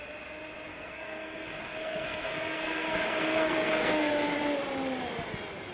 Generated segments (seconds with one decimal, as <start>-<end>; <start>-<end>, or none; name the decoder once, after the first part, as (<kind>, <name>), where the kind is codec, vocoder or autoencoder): 0.7-4.1 (codec, SNAC)

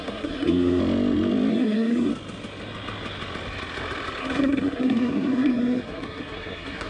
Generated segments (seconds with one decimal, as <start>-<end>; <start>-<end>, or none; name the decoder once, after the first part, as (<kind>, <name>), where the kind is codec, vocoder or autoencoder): 0.0-0.8 (codec, SNAC); 1.5-2.1; 4.2-6.9

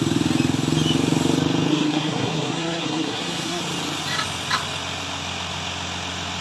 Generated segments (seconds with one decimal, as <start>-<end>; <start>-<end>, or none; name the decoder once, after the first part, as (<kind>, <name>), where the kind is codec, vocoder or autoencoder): 1.7-3.6 (codec, SNAC)

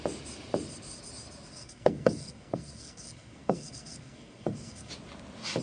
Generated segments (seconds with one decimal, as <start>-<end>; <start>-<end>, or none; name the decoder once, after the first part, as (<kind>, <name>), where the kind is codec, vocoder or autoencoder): 1.5-4.9 (codec, SNAC)

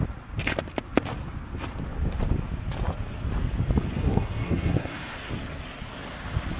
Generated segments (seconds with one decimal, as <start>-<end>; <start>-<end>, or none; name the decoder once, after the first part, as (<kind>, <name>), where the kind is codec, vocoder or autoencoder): 4.0-5.3 (codec, SNAC)

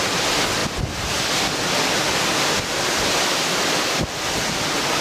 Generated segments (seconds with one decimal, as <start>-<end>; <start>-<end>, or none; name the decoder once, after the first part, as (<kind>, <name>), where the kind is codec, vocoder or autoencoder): none

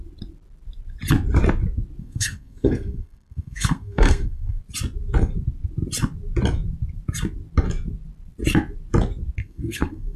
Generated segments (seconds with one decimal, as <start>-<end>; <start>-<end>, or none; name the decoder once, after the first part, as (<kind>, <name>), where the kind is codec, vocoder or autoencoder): 2.0-4.6 (codec, SNAC); 9.4-10.2